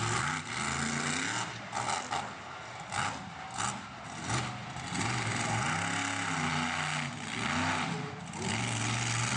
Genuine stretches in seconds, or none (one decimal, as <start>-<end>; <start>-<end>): 0.0-9.4